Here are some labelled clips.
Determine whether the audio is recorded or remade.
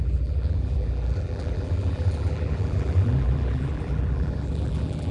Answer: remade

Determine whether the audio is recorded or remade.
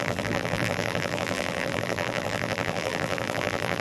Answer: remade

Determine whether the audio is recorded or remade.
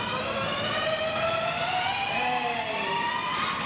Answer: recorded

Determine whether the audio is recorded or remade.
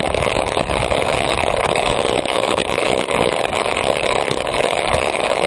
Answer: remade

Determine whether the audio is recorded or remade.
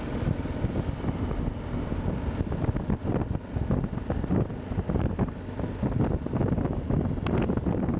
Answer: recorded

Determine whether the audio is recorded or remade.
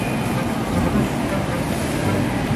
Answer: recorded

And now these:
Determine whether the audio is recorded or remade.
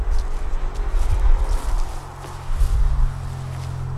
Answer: recorded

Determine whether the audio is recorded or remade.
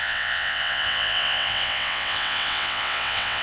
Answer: remade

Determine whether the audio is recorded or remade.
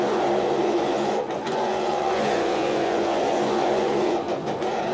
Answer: remade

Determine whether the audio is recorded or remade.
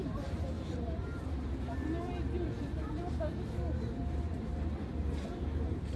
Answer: remade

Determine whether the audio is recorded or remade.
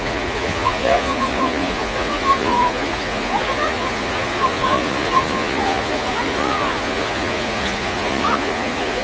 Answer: remade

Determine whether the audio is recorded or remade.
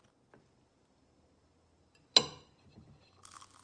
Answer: recorded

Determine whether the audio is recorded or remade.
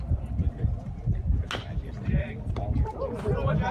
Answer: recorded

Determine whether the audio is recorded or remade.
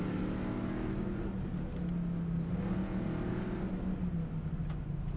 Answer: recorded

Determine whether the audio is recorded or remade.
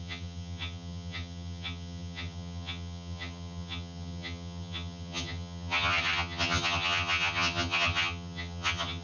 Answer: remade